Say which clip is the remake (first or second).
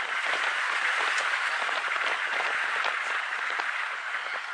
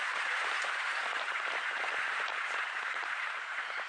second